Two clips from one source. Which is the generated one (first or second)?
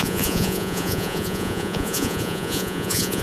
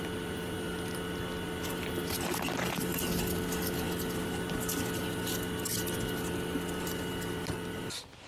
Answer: first